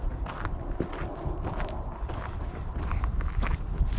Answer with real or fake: real